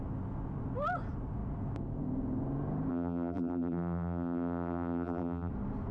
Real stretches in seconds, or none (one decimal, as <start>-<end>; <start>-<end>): 0.0-2.9; 5.5-5.9